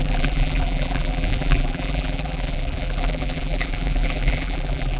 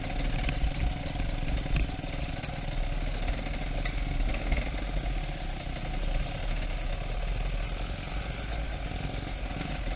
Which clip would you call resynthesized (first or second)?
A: first